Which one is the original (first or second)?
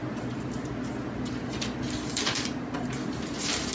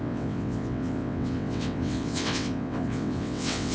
first